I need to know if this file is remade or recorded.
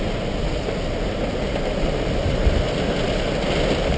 recorded